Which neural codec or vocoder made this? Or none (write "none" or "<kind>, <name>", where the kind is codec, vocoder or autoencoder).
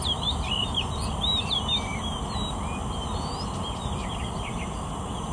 none